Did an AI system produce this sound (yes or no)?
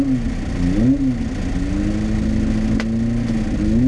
no